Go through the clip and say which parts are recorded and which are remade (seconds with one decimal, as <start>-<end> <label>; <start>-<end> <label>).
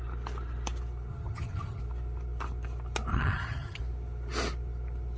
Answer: 0.0-1.1 recorded; 1.1-1.8 remade; 1.8-3.1 recorded; 3.1-3.8 remade; 3.8-5.2 recorded